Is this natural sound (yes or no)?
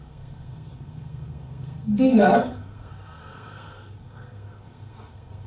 no